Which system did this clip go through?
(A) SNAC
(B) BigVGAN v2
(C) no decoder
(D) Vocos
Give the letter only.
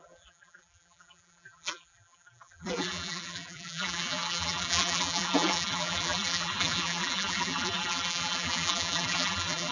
B